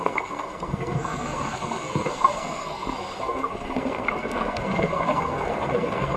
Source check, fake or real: fake